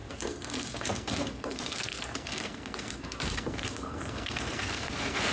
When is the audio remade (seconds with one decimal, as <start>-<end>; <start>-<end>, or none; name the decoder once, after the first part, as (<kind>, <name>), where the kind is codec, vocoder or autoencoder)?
0.0-5.3 (codec, SNAC)